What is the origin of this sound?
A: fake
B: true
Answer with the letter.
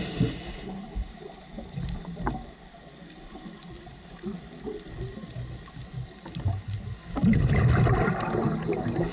B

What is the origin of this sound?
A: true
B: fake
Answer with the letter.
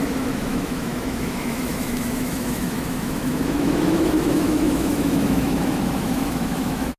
B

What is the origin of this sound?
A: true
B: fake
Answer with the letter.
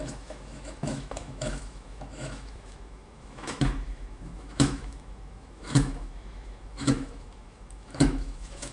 B